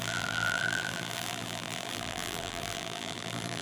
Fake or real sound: fake